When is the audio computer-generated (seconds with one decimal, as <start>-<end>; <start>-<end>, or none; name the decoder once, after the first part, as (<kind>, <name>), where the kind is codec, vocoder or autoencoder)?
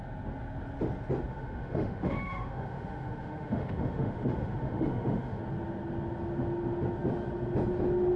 1.3-5.4 (autoencoder, DAC-VAE)